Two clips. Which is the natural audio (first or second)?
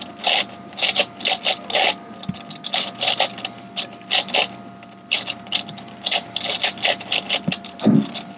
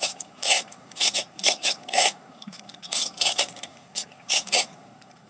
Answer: first